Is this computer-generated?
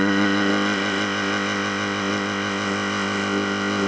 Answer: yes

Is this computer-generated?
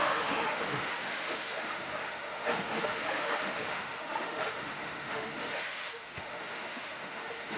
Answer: yes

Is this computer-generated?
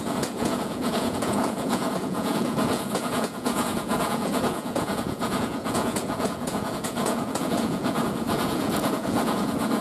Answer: yes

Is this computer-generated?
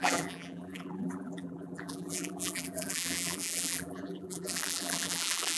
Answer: yes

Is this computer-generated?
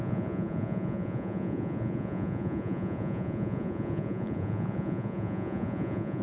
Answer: yes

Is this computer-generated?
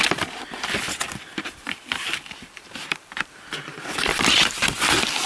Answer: yes